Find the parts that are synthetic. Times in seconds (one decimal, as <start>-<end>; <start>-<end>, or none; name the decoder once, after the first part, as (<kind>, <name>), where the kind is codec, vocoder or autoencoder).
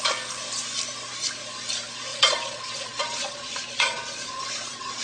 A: 2.1-5.0 (vocoder, Vocos)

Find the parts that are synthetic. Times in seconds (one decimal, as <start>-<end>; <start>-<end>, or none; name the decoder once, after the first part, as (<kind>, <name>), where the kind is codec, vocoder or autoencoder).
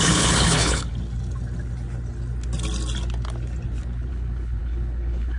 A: 0.0-0.9 (codec, HILCodec); 4.1-5.4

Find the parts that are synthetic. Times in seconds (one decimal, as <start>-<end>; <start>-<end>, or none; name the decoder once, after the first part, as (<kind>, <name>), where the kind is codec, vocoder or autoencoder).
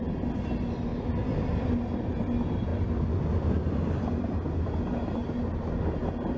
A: none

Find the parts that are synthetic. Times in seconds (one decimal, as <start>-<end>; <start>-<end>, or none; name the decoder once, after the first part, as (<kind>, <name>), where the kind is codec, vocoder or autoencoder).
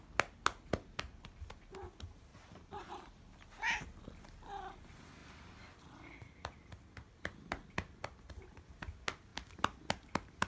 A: 2.3-3.1 (vocoder, BigVGAN v2)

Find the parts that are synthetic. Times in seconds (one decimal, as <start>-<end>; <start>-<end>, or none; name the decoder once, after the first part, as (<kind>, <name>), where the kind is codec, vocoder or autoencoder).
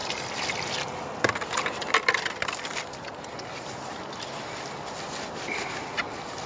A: 1.9-2.7 (vocoder, BigVGAN v2); 3.3-6.5